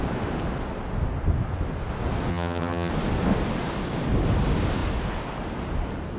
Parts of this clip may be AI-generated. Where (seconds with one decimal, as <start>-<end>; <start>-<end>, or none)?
2.3-2.9